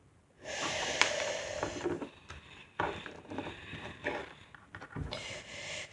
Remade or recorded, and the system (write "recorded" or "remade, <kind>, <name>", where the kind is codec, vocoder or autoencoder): remade, vocoder, BigVGAN v2